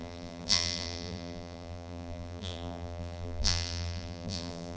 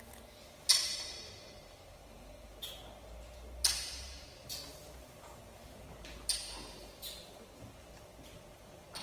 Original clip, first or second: second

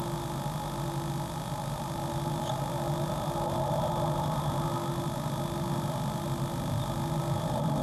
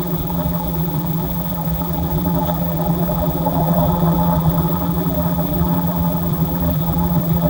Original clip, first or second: first